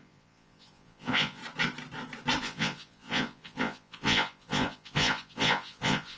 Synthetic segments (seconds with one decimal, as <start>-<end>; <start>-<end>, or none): 0.0-1.4; 2.4-6.2

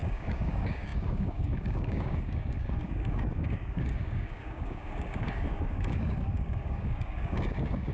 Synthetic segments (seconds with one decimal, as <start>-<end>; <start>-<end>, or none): 0.0-7.9

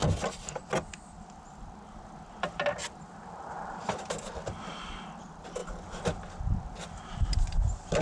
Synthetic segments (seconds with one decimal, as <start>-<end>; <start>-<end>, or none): none